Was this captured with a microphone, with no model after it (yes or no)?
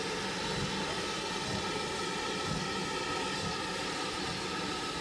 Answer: yes